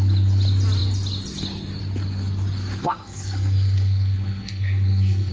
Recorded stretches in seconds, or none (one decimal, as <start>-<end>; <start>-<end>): 0.0-2.8